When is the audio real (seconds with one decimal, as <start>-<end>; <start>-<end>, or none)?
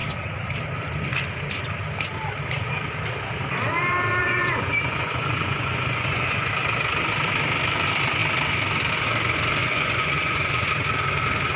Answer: 0.0-4.2; 6.5-9.6; 10.7-11.6